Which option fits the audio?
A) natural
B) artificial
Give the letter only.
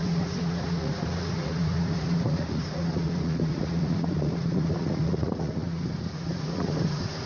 B